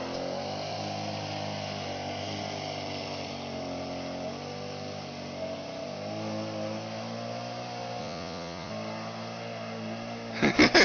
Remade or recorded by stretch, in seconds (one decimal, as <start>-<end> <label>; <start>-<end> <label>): 0.0-8.0 recorded; 8.0-8.7 remade; 8.7-10.8 recorded